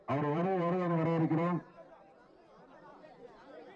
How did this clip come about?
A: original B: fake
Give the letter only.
B